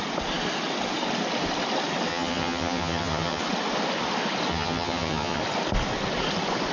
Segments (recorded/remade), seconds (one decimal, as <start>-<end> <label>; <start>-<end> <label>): 0.0-2.1 recorded; 2.1-3.4 remade; 3.4-4.5 recorded; 4.5-5.4 remade; 5.4-6.7 recorded